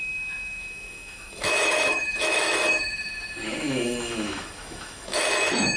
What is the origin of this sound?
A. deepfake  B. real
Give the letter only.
A